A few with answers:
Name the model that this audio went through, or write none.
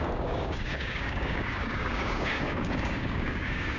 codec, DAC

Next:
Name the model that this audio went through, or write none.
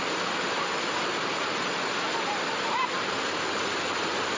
none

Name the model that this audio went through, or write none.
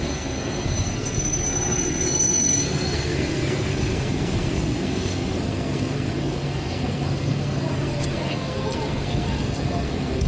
codec, SNAC